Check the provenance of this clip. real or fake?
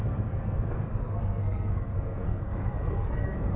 fake